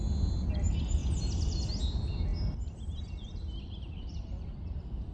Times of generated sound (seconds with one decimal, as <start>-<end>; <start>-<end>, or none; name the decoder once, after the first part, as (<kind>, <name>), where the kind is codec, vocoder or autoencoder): none